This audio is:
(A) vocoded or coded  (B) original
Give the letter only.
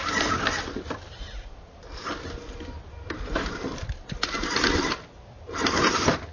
B